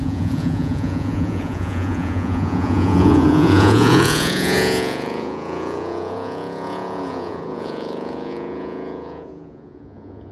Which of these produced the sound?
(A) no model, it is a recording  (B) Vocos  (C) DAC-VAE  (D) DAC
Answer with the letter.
B